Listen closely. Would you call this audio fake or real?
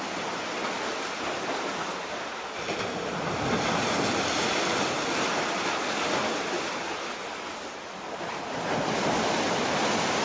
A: real